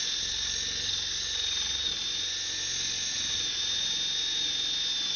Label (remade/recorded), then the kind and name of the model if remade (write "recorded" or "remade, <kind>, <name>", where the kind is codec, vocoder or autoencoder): recorded